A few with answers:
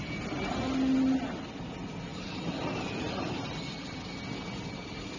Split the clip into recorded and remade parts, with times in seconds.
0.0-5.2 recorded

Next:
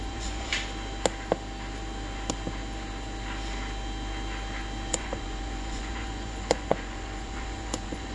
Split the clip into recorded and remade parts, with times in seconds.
0.0-0.5 remade; 0.5-4.9 recorded; 4.9-8.1 remade